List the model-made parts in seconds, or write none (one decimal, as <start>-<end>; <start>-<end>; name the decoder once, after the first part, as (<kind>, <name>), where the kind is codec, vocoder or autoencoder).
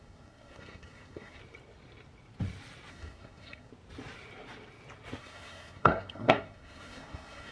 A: 0.0-1.4 (codec, SNAC); 2.9-3.7; 5.2-7.5